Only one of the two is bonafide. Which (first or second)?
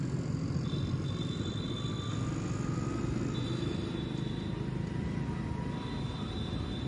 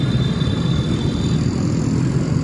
first